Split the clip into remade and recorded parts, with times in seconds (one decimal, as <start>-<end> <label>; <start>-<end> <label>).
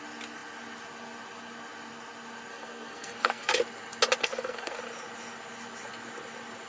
0.0-2.5 recorded; 2.5-3.6 remade; 3.6-4.2 recorded; 4.2-4.8 remade; 4.8-6.7 recorded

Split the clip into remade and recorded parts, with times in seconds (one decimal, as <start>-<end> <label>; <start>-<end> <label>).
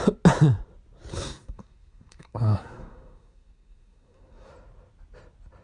0.0-1.1 recorded; 1.1-4.5 remade; 4.5-5.6 recorded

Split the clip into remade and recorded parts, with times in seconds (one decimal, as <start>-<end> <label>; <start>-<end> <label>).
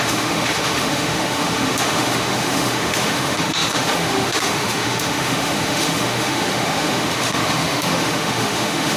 0.0-9.0 remade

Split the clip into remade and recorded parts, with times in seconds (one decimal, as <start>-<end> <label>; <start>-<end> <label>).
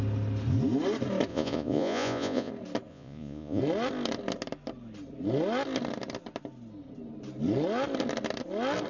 0.0-1.3 recorded; 1.3-2.5 remade; 2.5-2.9 recorded; 2.9-3.6 remade; 3.6-8.9 recorded